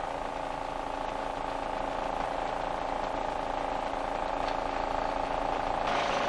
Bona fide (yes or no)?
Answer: yes